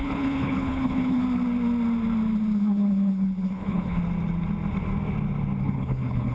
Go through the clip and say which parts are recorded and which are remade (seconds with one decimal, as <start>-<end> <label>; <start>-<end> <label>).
0.0-1.2 remade; 1.2-2.6 recorded; 2.6-4.0 remade; 4.0-5.6 recorded; 5.6-6.3 remade